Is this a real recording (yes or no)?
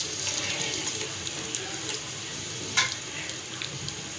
no